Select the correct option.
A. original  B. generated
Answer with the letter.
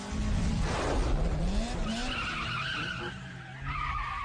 A